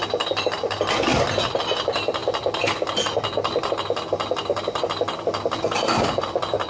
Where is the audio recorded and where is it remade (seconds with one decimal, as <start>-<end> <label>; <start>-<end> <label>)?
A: 0.0-6.7 recorded